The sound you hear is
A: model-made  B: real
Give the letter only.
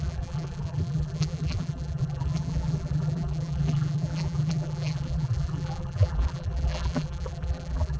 A